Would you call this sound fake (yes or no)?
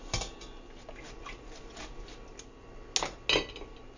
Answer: no